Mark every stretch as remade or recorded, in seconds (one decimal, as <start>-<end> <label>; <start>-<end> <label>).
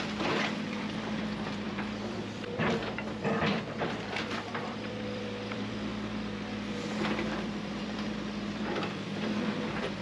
0.0-5.9 remade; 5.9-7.1 recorded; 7.1-10.0 remade